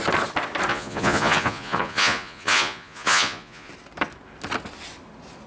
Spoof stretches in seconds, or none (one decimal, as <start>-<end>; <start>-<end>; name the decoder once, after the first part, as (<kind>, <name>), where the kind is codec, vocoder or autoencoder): 0.7-3.7 (vocoder, Vocos)